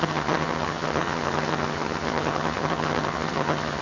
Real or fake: fake